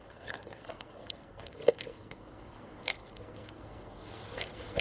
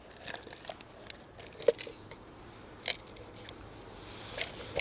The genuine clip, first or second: second